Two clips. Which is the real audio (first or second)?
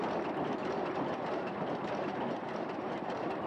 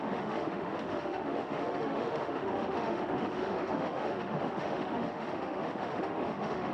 first